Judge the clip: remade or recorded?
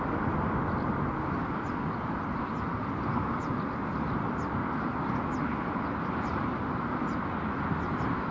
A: recorded